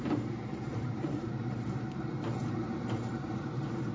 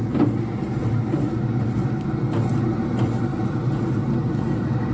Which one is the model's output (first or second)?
first